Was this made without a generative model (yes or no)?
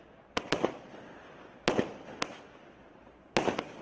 yes